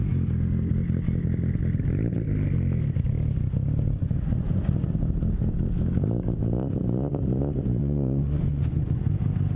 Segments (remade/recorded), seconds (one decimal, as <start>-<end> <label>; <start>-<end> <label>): 0.0-4.0 recorded; 4.0-4.9 remade; 4.9-7.8 recorded; 7.8-9.1 remade; 9.1-9.6 recorded